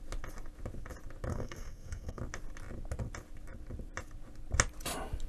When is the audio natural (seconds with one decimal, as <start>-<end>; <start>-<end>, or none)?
0.0-1.3; 2.2-5.3